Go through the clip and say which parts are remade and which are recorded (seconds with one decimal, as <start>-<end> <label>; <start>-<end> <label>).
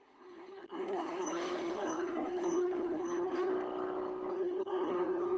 0.0-3.5 remade; 3.5-4.3 recorded; 4.3-5.4 remade